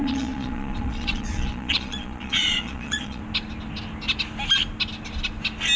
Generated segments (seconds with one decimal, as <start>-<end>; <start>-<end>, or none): 0.0-3.2